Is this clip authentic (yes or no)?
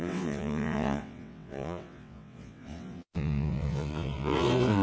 no